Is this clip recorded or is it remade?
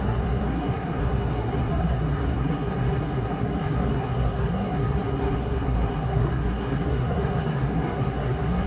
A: remade